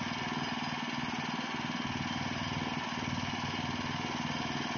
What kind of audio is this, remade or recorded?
recorded